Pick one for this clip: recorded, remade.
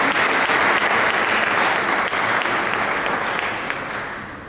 recorded